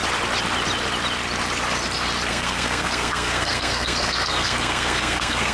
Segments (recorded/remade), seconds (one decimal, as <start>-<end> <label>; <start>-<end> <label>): 0.0-2.3 recorded; 2.3-5.5 remade